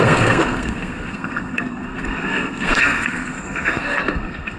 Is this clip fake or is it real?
fake